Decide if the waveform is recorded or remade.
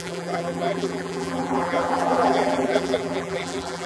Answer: remade